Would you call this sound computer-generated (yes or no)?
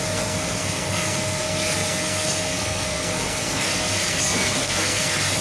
yes